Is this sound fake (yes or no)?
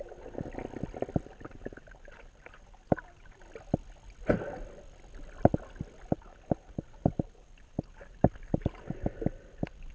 no